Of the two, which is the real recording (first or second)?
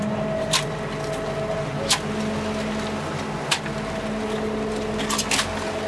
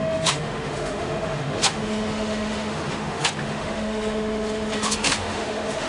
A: first